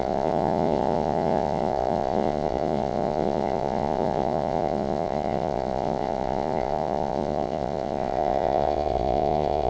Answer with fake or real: fake